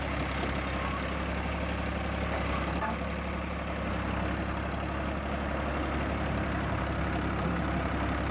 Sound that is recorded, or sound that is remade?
recorded